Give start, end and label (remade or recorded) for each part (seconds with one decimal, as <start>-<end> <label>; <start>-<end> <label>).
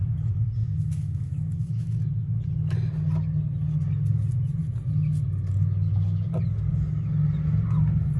0.0-0.6 recorded; 0.6-2.0 remade; 2.0-8.2 recorded